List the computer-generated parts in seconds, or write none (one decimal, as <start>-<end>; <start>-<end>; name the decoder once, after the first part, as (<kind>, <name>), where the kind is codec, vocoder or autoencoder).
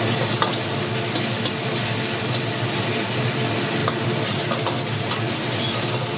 none